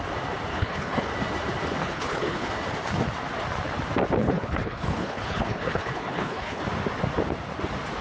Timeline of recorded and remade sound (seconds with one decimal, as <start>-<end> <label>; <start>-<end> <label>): 0.0-0.5 recorded; 0.5-1.1 remade; 1.1-1.8 recorded; 1.8-2.5 remade; 2.5-4.2 recorded; 4.2-6.6 remade; 6.6-8.0 recorded